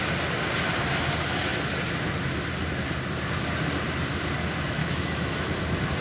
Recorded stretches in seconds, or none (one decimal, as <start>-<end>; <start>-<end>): 0.0-4.8; 5.5-6.0